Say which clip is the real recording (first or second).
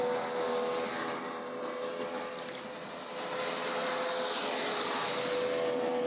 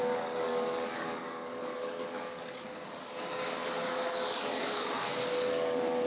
first